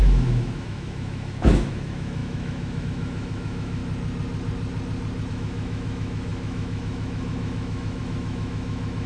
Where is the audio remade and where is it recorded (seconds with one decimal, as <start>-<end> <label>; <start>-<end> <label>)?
0.0-3.8 remade; 3.8-5.3 recorded; 5.3-9.1 remade